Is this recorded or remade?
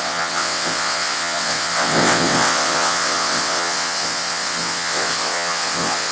remade